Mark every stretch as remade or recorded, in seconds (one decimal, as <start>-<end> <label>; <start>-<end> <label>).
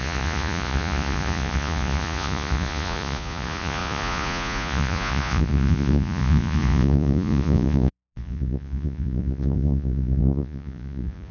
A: 0.0-11.3 remade